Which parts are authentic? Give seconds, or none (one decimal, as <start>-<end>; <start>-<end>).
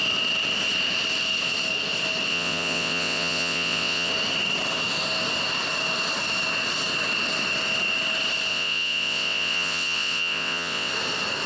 0.0-2.3; 4.1-8.5; 10.9-11.5